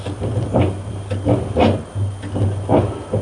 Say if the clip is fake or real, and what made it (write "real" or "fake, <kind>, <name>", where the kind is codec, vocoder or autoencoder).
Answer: real